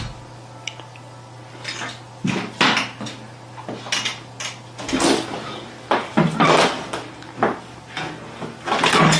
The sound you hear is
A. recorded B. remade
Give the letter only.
A